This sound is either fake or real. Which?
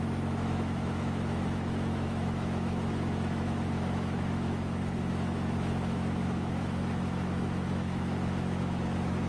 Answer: fake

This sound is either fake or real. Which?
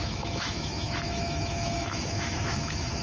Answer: fake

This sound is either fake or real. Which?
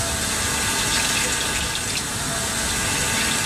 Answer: real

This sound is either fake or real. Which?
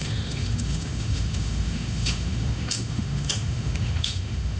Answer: fake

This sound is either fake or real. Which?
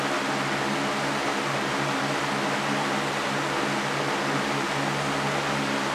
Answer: real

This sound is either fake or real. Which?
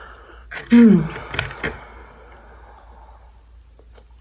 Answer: real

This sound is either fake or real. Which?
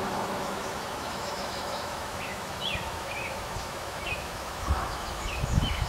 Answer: fake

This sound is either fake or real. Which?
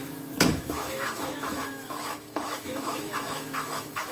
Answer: fake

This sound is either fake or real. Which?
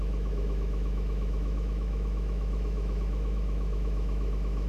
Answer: fake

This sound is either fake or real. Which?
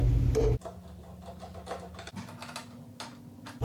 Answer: real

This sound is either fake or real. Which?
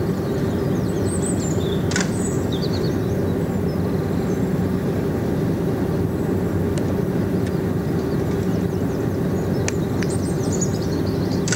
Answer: real